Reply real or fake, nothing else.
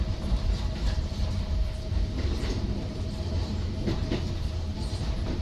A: fake